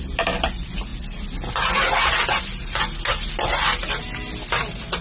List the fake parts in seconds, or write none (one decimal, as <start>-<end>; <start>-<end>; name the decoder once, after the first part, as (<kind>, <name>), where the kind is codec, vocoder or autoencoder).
none